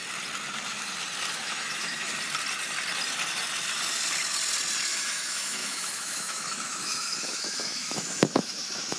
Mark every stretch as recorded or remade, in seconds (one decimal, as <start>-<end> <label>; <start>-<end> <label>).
0.0-1.3 recorded; 1.3-2.1 remade; 2.1-4.9 recorded; 4.9-9.0 remade